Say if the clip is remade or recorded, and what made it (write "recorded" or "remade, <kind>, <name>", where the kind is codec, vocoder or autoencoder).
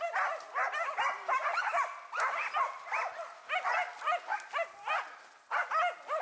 recorded